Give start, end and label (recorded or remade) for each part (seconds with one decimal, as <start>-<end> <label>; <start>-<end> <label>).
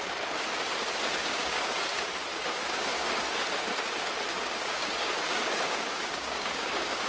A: 0.0-1.2 recorded; 1.2-1.7 remade; 1.7-2.3 recorded; 2.3-3.4 remade; 3.4-4.3 recorded; 4.3-7.1 remade